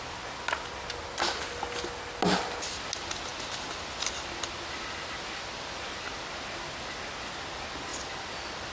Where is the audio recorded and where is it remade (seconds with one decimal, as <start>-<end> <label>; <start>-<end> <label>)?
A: 0.0-8.7 recorded